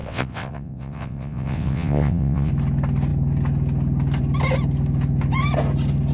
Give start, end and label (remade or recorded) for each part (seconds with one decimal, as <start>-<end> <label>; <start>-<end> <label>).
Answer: 0.0-2.5 remade; 2.5-6.1 recorded